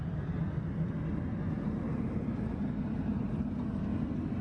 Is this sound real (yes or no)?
yes